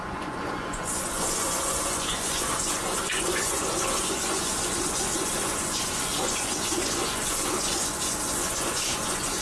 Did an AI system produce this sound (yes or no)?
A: yes